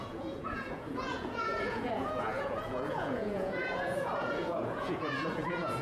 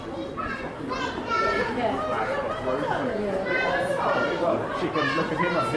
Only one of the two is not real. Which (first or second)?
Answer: first